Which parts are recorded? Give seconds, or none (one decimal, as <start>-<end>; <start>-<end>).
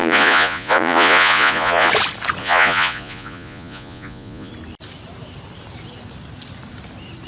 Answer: 1.9-2.4; 4.5-7.3